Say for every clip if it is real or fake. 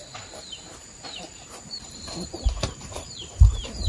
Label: fake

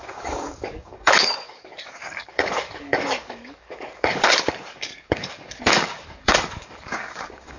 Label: fake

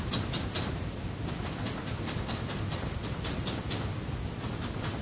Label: real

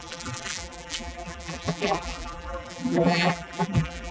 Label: fake